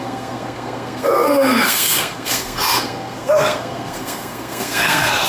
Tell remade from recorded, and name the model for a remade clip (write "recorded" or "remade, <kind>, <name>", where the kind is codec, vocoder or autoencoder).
remade, codec, SNAC